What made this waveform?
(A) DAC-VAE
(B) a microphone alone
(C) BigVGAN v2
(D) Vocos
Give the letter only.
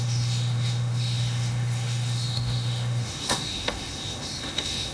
A